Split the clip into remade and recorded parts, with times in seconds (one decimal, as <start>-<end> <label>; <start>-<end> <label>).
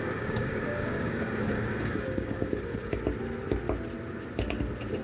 0.0-3.0 remade; 3.0-5.0 recorded